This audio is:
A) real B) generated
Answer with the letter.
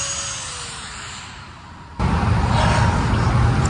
A